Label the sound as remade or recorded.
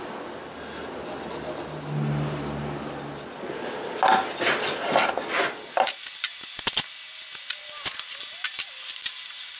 recorded